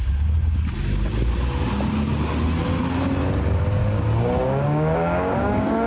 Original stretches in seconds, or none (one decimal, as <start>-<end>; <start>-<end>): 0.0-3.8